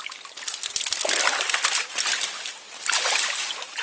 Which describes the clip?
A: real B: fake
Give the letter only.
A